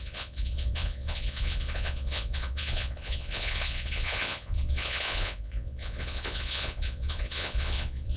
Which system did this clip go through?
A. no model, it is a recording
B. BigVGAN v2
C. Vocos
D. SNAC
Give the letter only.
C